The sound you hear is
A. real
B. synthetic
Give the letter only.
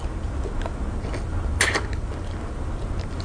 A